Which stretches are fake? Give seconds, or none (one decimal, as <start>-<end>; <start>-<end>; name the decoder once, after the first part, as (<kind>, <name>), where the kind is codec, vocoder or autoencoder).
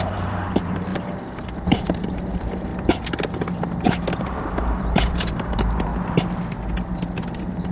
0.0-2.7 (vocoder, BigVGAN v2); 4.5-5.9; 7.3-7.7